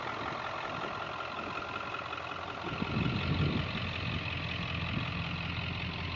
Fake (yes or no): no